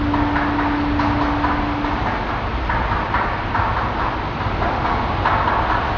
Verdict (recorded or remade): recorded